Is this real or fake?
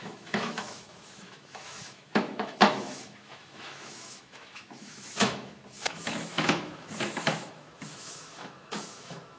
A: fake